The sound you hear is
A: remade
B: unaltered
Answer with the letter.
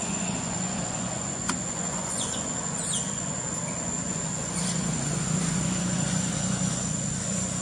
A